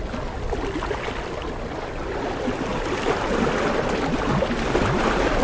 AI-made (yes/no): no